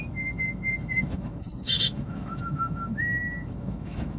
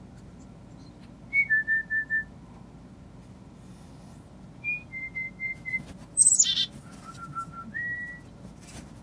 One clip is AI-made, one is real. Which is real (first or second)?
second